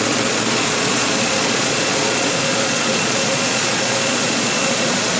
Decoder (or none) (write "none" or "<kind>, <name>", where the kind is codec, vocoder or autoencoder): vocoder, Vocos